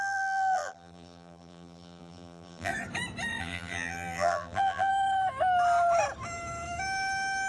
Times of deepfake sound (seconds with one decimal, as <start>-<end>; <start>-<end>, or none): 0.0-2.7; 3.4-4.9